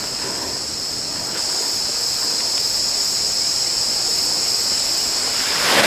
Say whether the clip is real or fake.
real